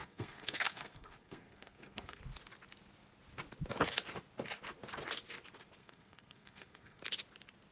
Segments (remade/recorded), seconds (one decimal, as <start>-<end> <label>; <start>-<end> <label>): 0.0-2.2 remade; 2.2-5.8 recorded; 5.8-7.0 remade; 7.0-7.7 recorded